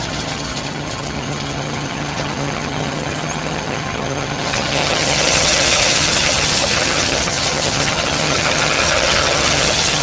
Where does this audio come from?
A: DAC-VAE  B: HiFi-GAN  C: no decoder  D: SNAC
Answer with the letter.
B